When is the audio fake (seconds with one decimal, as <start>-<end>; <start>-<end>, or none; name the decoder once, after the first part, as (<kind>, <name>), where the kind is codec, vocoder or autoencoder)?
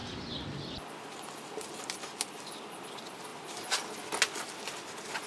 none